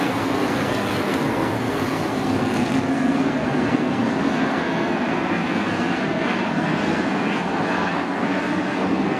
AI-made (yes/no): yes